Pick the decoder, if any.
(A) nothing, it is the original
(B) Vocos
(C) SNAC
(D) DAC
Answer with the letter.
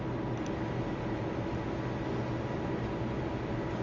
A